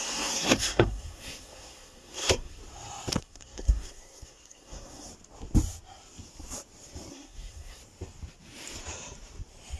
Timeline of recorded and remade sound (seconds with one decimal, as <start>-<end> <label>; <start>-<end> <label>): 0.0-2.6 remade; 2.6-3.2 recorded; 3.2-5.1 remade; 5.1-7.1 recorded; 7.1-7.8 remade; 7.8-9.8 recorded